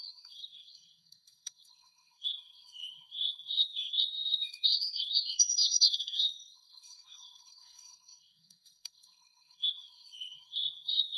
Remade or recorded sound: remade